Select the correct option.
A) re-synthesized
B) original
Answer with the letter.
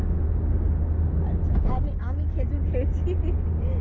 B